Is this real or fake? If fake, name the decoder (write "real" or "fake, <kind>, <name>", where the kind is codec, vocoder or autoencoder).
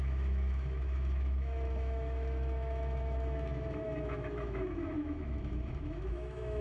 fake, autoencoder, DAC-VAE